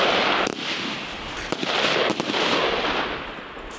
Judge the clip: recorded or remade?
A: recorded